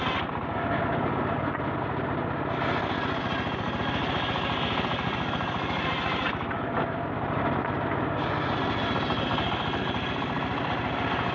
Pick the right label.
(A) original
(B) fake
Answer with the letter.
A